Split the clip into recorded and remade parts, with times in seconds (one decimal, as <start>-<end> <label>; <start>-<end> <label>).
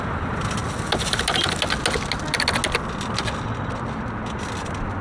0.0-5.0 recorded